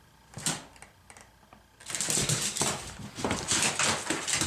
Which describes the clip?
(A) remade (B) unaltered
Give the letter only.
B